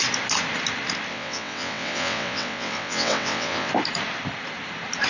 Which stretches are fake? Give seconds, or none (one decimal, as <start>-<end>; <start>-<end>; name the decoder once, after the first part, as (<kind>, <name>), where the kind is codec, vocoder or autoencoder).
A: 1.1-3.7 (vocoder, WaveNeXt)